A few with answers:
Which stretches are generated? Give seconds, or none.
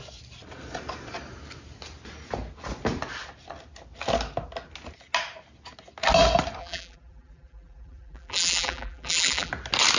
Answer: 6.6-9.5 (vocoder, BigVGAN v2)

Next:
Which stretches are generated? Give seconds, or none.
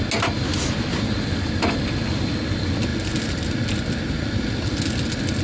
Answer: none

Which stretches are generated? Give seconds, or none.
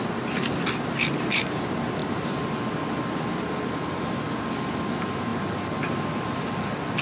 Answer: none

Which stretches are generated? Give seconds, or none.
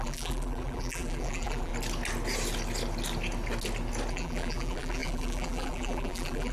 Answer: 0.0-1.7 (vocoder, BigVGAN v2); 4.1-6.5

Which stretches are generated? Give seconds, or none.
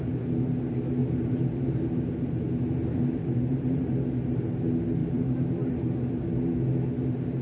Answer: 1.0-4.5 (vocoder, BigVGAN v2); 5.0-6.3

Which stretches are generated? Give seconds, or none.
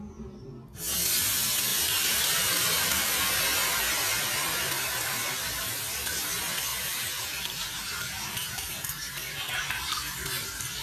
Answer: 1.7-3.4 (vocoder, BigVGAN v2); 6.7-9.7